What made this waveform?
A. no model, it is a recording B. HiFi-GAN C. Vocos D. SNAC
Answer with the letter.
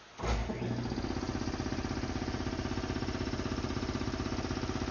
A